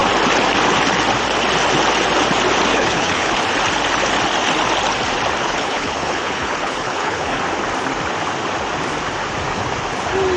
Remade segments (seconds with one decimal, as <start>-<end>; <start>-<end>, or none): 2.7-3.4; 5.4-7.4